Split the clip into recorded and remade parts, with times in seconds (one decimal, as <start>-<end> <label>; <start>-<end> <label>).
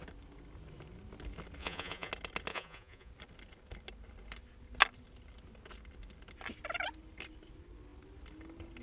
0.0-1.6 recorded; 1.6-2.1 remade; 2.1-2.5 recorded; 2.5-3.1 remade; 3.1-8.8 recorded